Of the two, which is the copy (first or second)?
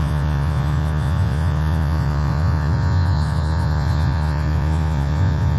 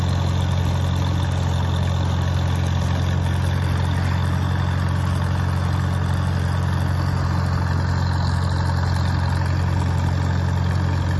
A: first